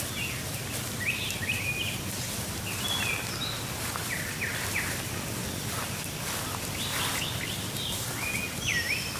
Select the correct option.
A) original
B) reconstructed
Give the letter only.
A